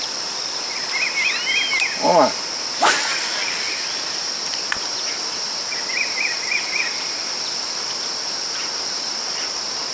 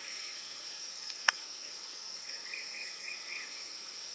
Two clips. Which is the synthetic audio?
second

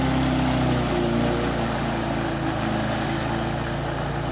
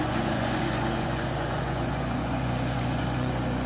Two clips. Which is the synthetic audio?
second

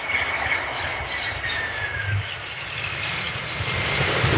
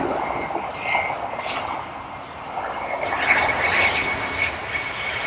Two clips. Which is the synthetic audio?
first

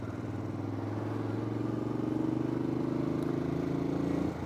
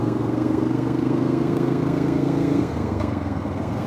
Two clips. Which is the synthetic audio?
second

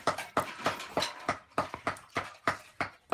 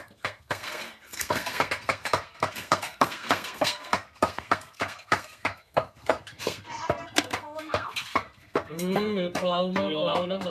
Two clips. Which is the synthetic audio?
second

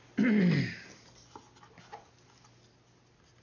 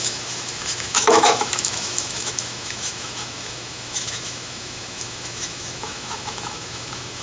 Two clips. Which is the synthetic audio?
second